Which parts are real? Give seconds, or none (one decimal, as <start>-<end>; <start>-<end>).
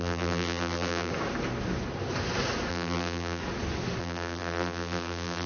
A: 1.1-2.7; 3.4-4.0